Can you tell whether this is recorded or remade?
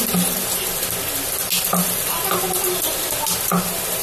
recorded